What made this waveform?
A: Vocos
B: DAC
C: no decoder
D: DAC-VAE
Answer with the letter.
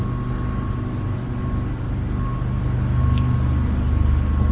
C